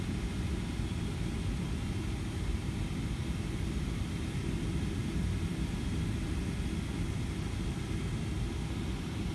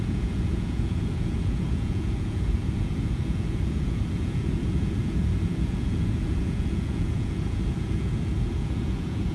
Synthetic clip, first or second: second